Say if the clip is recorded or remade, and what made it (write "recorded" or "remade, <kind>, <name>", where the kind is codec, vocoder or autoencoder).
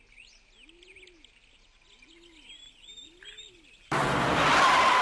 recorded